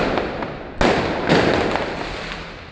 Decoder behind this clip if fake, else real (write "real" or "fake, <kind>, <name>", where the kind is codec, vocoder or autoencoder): real